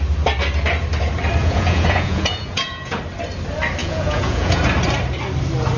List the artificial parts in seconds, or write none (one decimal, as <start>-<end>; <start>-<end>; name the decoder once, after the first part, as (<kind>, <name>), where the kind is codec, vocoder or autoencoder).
1.4-3.0 (vocoder, Vocos); 3.8-4.6